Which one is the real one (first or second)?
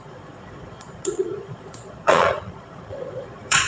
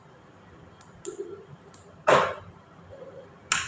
second